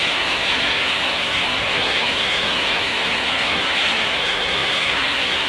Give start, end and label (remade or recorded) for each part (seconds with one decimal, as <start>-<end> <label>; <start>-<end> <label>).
0.0-5.5 remade